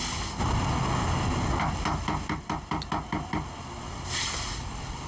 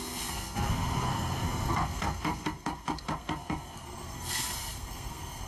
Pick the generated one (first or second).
second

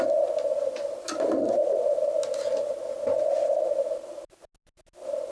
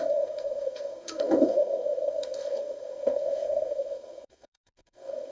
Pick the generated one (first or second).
second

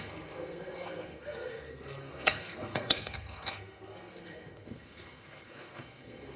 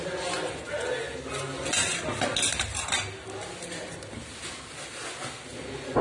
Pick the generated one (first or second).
first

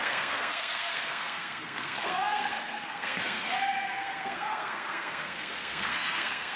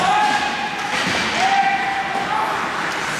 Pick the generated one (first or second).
first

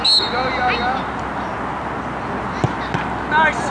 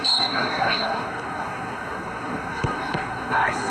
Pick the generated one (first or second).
second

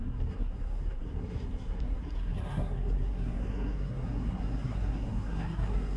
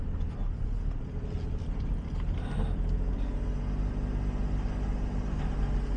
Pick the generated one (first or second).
first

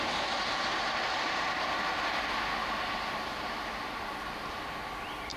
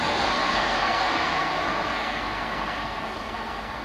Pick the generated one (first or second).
second